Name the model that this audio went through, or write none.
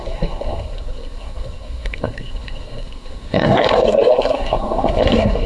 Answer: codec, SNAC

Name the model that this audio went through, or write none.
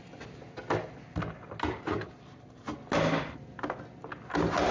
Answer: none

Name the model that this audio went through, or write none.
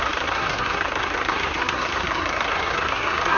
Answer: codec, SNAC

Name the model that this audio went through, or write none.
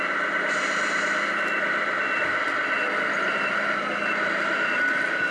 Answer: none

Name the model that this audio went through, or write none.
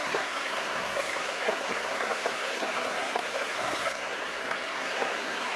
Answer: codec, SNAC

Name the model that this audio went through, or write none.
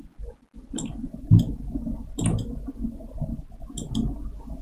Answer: none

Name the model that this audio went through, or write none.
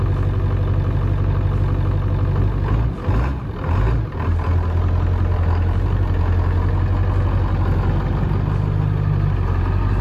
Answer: none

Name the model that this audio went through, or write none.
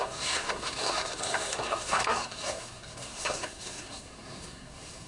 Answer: codec, SNAC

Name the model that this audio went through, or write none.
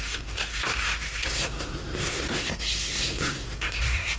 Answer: codec, SNAC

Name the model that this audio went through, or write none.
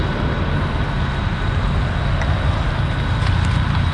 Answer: none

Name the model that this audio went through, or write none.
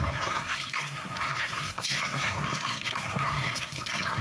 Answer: codec, SNAC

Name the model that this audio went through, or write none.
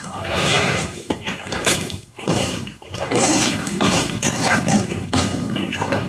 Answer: codec, SNAC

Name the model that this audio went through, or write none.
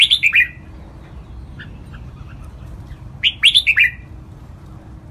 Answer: none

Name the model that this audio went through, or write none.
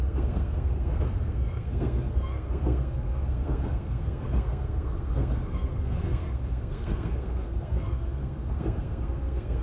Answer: codec, SNAC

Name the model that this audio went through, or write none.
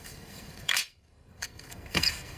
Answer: codec, SNAC